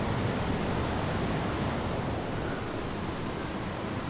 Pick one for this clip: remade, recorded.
recorded